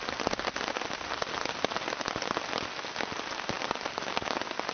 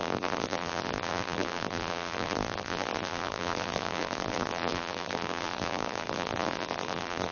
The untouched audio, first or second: first